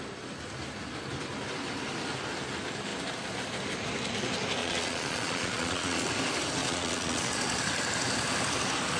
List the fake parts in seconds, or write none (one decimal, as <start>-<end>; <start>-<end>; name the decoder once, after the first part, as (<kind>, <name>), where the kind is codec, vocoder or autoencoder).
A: 4.6-6.1 (vocoder, Vocos); 6.6-7.3